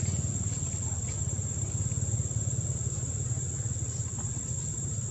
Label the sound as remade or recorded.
recorded